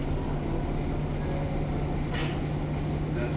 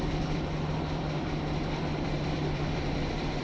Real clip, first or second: first